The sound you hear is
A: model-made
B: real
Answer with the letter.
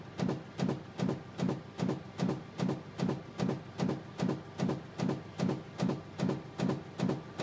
B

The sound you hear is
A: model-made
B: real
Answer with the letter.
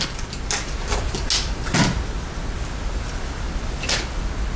B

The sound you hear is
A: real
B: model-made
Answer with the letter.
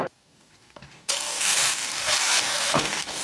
B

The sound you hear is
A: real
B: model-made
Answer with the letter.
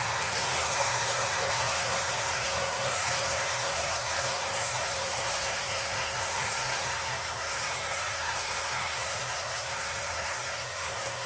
B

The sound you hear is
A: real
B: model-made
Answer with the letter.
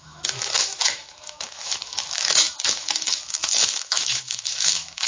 B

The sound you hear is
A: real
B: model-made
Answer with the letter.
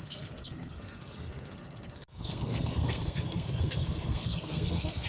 B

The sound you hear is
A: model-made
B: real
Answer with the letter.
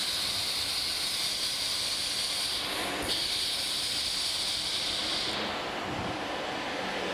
B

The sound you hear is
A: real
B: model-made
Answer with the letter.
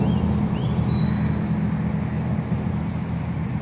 A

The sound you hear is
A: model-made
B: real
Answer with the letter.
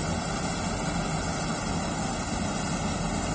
B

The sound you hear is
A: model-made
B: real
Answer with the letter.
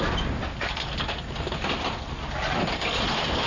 B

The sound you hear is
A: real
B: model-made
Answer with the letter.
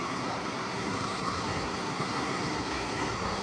B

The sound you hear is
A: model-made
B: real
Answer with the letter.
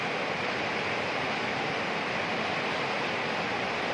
B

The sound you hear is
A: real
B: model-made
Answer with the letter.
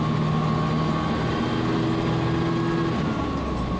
A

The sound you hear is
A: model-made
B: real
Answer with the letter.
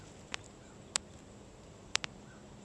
A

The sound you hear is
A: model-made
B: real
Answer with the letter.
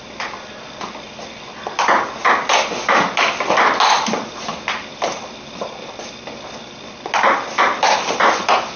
B